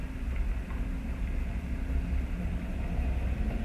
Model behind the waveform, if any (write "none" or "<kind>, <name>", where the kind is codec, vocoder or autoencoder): none